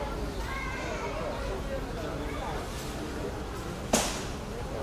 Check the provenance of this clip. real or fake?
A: real